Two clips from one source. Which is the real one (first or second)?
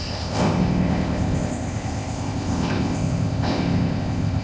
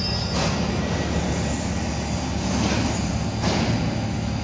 second